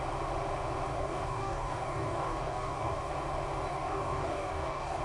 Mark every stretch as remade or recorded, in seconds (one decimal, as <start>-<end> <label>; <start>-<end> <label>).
0.0-0.9 recorded; 0.9-3.1 remade; 3.1-3.7 recorded; 3.7-5.0 remade

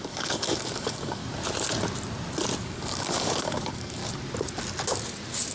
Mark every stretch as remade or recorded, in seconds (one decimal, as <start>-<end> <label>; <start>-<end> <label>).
0.0-1.2 remade; 1.2-2.6 recorded; 2.6-4.0 remade; 4.0-5.5 recorded

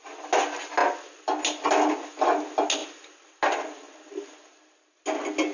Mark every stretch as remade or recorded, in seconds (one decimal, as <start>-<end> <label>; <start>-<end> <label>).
0.0-5.5 recorded

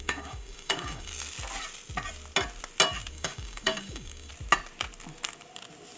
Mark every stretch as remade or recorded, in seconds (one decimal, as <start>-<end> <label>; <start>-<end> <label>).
0.0-1.1 remade; 1.1-3.1 recorded; 3.1-4.3 remade; 4.3-6.0 recorded